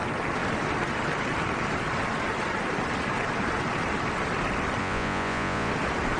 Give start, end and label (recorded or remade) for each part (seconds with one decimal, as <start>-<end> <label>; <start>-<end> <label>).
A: 0.0-4.8 recorded; 4.8-5.7 remade; 5.7-6.2 recorded